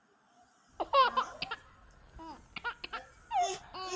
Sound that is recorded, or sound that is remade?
recorded